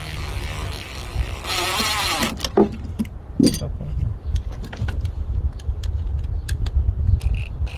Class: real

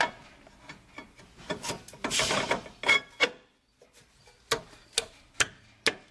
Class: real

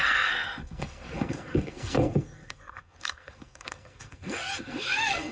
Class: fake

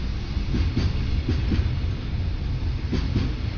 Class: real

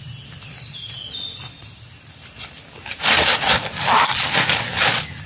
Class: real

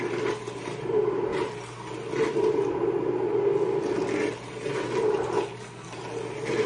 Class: real